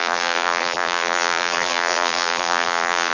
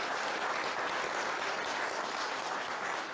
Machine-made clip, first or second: first